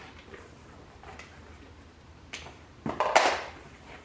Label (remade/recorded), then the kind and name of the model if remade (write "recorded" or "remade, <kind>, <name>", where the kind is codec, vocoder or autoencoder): recorded